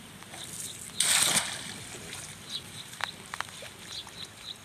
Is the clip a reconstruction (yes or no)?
no